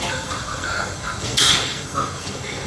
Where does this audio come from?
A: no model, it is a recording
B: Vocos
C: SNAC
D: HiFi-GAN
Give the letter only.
C